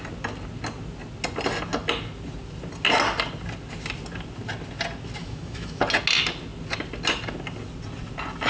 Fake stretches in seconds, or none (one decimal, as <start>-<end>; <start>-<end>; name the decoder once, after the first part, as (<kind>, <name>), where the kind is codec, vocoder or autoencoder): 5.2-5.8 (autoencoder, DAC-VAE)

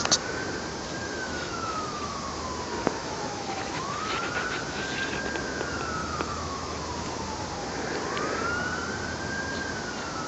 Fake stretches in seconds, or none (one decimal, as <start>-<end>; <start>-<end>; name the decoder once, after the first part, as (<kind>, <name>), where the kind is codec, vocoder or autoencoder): 1.0-2.1 (autoencoder, DAC-VAE); 3.0-4.3; 6.0-6.8

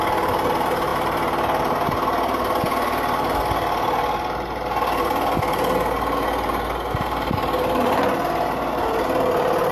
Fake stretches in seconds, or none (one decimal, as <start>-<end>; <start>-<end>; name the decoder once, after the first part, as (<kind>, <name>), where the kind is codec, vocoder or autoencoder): none